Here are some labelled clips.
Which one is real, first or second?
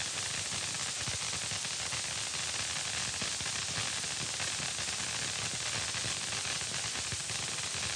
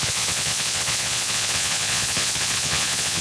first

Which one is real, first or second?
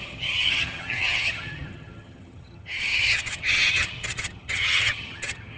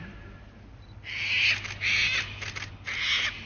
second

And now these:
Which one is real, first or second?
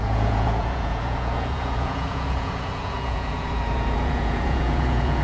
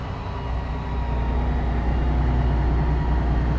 second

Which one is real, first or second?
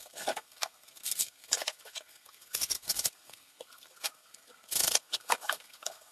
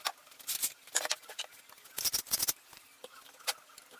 second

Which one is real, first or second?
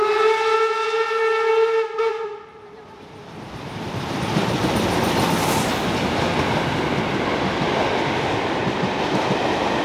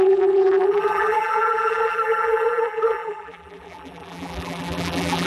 first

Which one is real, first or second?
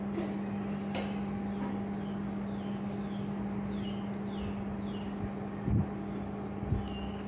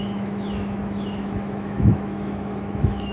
first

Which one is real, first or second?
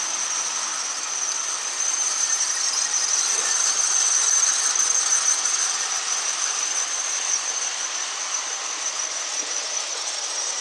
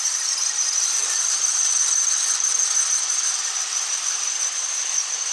first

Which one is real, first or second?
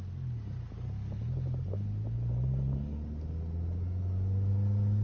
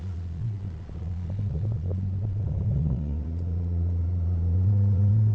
first